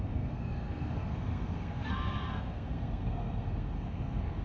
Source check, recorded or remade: remade